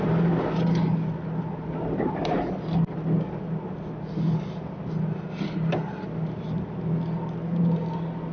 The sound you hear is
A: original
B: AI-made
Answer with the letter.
A